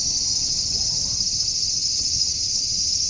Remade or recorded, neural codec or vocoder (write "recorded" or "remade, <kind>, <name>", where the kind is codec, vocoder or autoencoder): remade, vocoder, HiFi-GAN